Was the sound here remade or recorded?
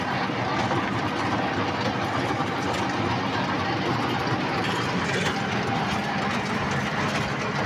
recorded